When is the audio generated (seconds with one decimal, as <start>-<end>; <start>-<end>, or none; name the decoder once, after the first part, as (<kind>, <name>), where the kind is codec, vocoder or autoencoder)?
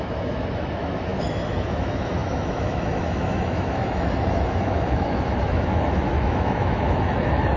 0.0-7.6 (autoencoder, DAC-VAE)